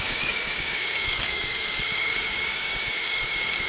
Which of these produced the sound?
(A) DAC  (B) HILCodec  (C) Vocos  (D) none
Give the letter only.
A